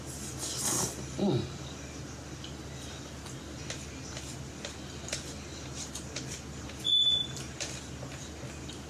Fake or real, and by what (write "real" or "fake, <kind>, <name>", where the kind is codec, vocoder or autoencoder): real